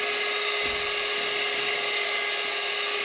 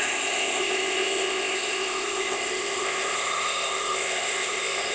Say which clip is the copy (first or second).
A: second